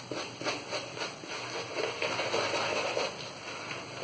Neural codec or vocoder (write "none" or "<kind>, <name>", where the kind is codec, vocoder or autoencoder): none